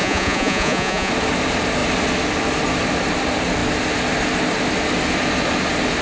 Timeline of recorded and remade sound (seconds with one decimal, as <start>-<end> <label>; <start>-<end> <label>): 0.0-1.1 remade; 1.1-6.0 recorded